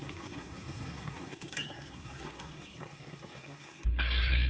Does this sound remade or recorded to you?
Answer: remade